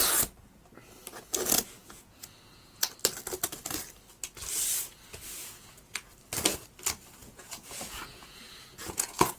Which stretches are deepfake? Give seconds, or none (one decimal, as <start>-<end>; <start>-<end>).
1.8-2.9; 5.4-6.1; 7.2-9.4